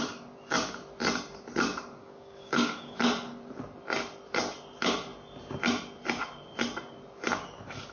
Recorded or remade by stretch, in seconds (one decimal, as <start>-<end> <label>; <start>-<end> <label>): 0.0-2.0 recorded; 2.0-3.0 remade; 3.0-7.9 recorded